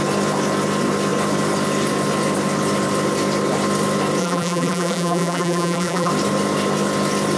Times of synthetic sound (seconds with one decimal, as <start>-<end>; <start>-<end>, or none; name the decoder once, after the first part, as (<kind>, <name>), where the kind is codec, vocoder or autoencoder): 4.2-6.1 (vocoder, BigVGAN v2)